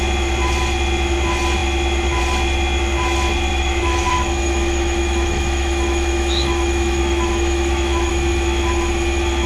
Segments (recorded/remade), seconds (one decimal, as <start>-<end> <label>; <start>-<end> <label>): 0.0-3.5 recorded; 3.5-8.1 remade; 8.1-9.5 recorded